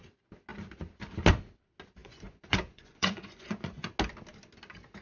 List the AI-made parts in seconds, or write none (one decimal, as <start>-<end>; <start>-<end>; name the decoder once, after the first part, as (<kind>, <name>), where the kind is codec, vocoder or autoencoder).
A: 2.0-3.9 (vocoder, Vocos)